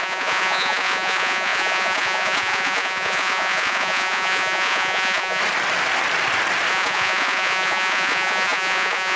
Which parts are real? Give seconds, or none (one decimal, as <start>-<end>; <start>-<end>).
5.4-6.7